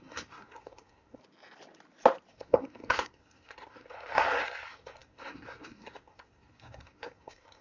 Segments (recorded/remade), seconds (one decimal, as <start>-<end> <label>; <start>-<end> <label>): 0.0-1.2 remade; 1.2-2.3 recorded; 2.3-7.6 remade